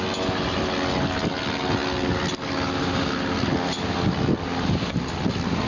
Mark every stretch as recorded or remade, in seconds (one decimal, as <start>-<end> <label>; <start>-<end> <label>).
0.0-5.7 recorded